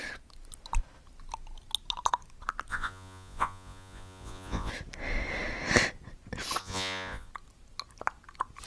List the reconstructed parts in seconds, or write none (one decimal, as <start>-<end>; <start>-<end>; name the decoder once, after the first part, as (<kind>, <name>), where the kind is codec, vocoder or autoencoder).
2.7-4.7 (vocoder, Vocos); 6.6-7.3